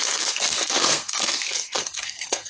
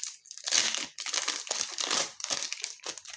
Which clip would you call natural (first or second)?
second